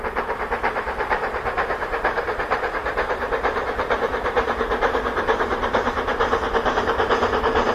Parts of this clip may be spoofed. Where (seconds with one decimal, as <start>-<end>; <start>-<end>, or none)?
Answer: 0.0-6.1; 6.7-7.7